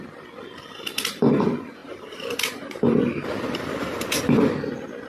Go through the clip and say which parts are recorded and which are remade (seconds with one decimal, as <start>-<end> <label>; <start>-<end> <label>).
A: 0.0-1.8 recorded; 1.8-4.5 remade; 4.5-5.1 recorded